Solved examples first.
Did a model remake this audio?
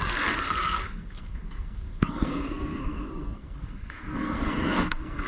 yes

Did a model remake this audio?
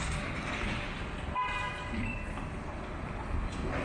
no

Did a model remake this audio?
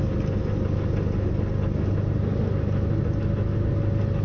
no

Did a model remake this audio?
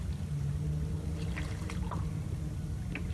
no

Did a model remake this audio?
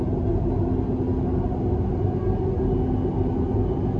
no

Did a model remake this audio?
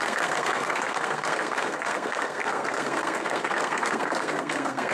yes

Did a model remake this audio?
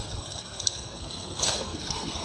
yes